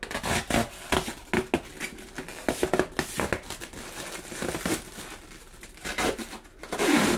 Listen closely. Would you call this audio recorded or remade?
recorded